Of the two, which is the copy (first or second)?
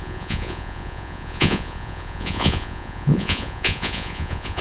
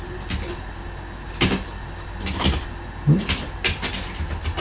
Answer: first